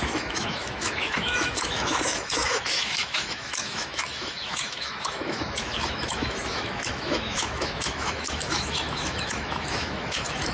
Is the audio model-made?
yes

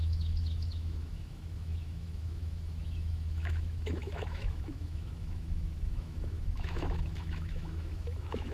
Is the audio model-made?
yes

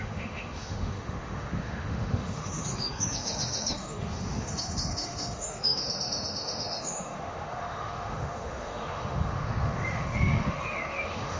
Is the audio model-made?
yes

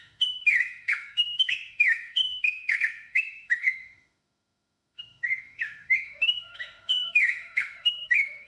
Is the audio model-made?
yes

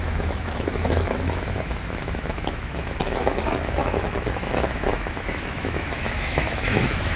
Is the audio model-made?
yes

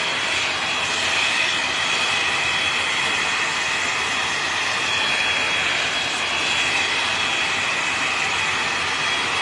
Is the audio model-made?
no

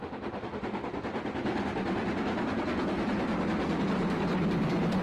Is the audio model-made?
no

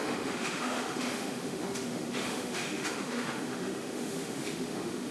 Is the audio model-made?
yes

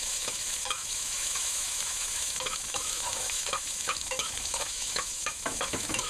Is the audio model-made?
yes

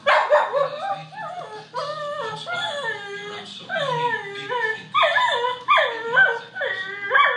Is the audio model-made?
no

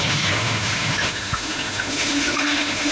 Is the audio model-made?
yes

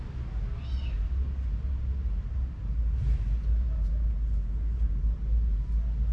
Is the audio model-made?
no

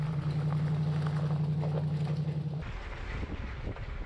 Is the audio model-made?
no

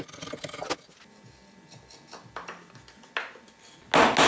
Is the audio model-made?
no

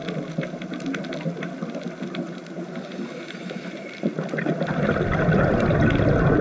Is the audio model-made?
no